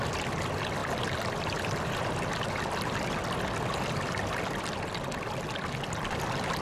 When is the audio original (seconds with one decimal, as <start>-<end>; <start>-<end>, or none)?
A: 0.0-6.6